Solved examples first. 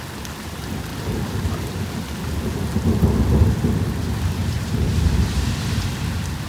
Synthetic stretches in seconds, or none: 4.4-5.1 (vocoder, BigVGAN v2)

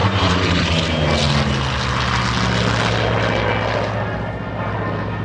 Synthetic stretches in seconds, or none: 0.0-0.8 (vocoder, BigVGAN v2)

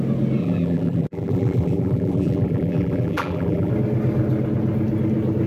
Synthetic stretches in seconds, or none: 0.4-3.7 (vocoder, BigVGAN v2)

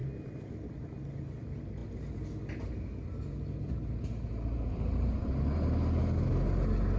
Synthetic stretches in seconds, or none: 0.0-0.7 (vocoder, BigVGAN v2)

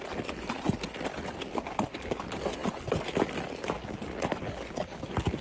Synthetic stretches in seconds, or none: 0.0-5.4 (vocoder, BigVGAN v2)

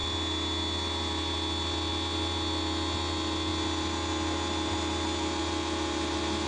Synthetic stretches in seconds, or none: none

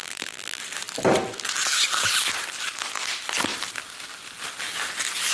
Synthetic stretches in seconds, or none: 0.0-0.6 (vocoder, BigVGAN v2)

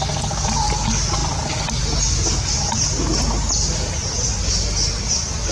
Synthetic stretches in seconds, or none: none